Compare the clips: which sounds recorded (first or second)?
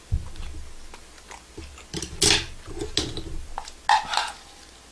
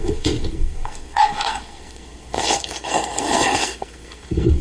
first